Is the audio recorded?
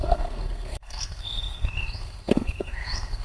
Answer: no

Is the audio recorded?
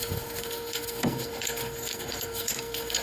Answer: no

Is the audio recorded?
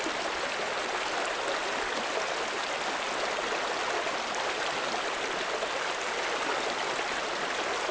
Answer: yes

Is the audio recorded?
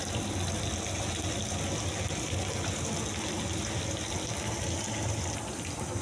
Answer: yes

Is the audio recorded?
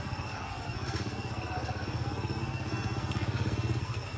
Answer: no